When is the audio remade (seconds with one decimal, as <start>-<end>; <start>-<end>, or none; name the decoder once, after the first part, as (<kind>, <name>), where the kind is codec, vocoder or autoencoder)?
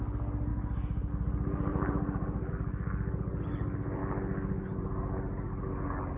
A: 0.5-1.1 (vocoder, BigVGAN v2); 1.7-2.5